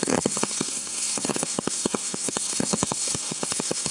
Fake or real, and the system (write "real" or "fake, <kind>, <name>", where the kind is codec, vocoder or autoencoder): fake, codec, SNAC